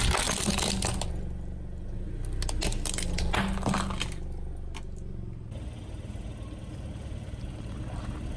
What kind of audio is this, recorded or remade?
recorded